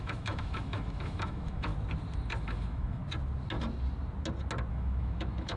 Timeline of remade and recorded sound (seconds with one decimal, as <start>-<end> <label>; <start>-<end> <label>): 0.0-1.7 remade; 1.7-2.4 recorded; 2.4-3.0 remade; 3.0-4.7 recorded; 4.7-5.6 remade